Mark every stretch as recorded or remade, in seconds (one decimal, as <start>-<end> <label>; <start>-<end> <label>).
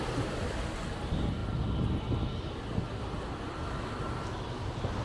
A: 0.0-5.0 recorded